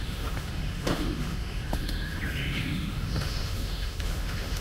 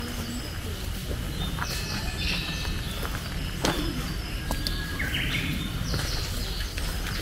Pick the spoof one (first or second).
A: first